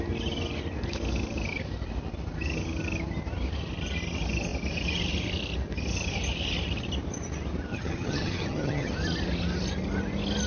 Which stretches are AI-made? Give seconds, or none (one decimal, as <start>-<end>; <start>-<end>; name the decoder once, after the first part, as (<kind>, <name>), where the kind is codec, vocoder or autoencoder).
7.7-8.9 (vocoder, HiFi-GAN)